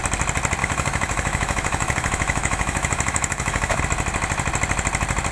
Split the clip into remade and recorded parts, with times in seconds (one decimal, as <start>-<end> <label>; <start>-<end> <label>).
0.0-0.6 recorded; 0.6-3.8 remade; 3.8-5.3 recorded